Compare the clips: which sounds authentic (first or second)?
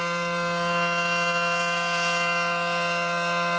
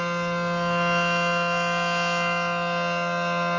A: second